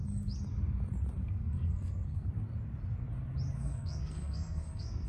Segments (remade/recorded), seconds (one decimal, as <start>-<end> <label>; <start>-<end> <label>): 0.0-1.2 recorded; 1.2-2.3 remade; 2.3-3.6 recorded; 3.6-5.1 remade